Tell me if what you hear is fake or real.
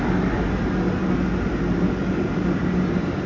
real